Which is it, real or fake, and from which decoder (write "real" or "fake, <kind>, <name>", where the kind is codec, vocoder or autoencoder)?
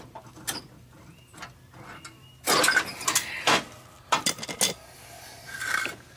real